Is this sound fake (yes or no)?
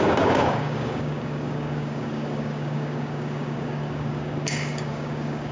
yes